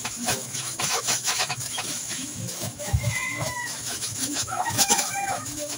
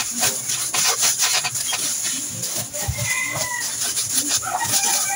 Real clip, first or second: second